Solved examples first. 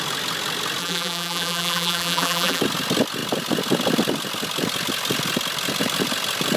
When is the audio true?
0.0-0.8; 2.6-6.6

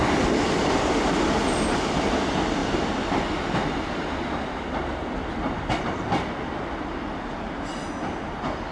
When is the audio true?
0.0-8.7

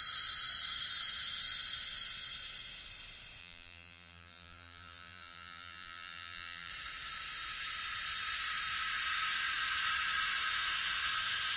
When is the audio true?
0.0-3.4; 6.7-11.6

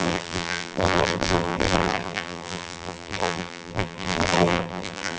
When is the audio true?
none

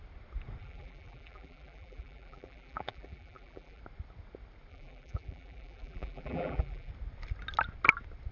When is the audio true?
0.0-0.6; 3.8-4.7; 6.9-8.3

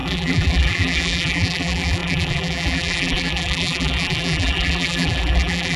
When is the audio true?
none